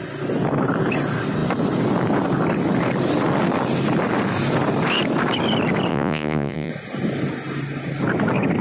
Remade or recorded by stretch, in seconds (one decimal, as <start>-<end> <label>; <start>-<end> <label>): 0.0-5.9 recorded; 5.9-6.7 remade; 6.7-8.6 recorded